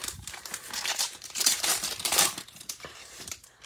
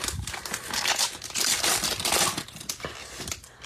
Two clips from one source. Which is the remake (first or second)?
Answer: first